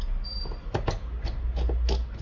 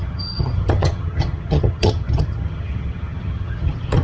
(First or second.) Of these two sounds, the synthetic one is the second